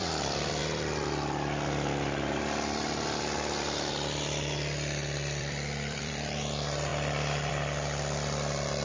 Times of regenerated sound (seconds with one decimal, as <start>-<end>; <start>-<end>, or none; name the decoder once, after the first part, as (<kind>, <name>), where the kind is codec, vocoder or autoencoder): 0.0-0.6 (vocoder, BigVGAN v2); 5.4-8.8